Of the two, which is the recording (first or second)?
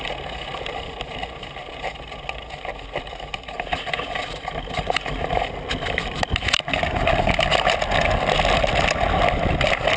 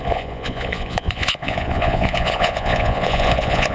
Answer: first